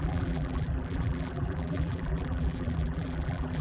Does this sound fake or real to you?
fake